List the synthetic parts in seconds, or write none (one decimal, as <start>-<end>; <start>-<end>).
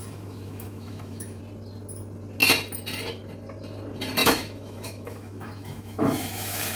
0.0-1.4; 4.2-6.8